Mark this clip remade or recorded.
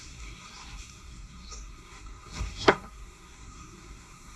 remade